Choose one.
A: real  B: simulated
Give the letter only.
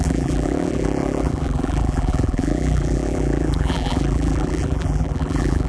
B